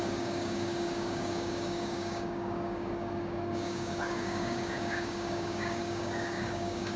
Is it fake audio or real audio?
fake